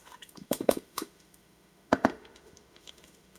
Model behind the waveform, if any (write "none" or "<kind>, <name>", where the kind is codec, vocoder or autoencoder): autoencoder, DAC-VAE